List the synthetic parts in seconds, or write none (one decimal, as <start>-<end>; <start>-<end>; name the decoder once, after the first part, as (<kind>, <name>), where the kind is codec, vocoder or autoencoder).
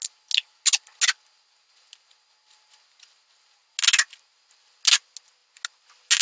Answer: none